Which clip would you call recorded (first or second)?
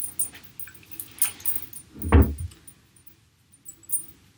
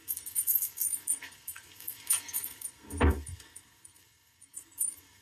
first